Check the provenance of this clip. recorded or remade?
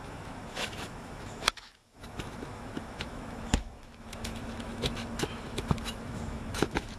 remade